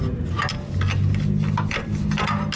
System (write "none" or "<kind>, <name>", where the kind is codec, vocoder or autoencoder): none